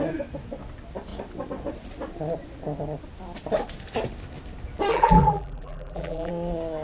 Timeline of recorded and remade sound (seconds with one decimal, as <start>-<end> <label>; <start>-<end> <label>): 0.0-4.9 recorded; 4.9-6.3 remade; 6.3-6.8 recorded